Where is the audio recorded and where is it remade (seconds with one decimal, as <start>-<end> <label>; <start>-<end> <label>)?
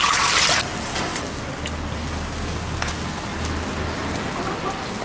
0.0-5.0 recorded